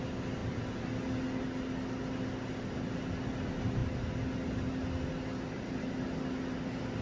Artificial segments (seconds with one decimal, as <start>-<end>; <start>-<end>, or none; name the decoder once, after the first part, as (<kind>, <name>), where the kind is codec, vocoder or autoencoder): none